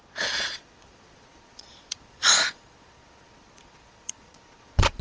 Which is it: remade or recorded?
remade